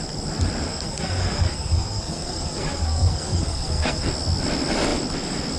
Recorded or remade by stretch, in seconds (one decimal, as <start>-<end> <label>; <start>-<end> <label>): 0.0-0.7 recorded; 0.7-4.1 remade; 4.1-5.6 recorded